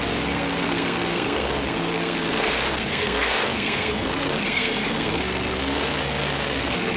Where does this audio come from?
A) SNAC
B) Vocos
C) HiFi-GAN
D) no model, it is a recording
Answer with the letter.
A